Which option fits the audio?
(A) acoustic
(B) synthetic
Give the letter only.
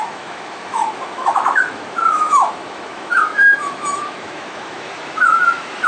B